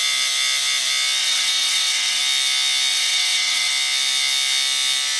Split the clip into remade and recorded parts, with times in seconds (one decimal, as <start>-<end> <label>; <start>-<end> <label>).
0.0-1.2 recorded; 1.2-2.2 remade; 2.2-2.9 recorded; 2.9-3.7 remade; 3.7-5.2 recorded